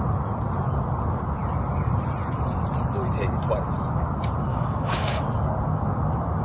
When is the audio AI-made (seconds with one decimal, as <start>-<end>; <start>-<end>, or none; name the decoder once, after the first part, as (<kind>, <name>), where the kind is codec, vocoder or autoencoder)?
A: 4.5-5.2 (codec, DAC)